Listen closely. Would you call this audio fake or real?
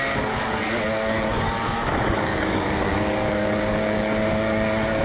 fake